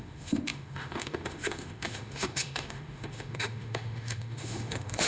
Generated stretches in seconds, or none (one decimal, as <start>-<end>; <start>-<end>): 0.0-5.1